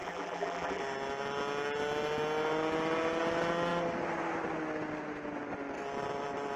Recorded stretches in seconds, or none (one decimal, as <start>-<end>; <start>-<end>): 0.8-6.6